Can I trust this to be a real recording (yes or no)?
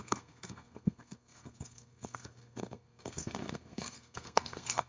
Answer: no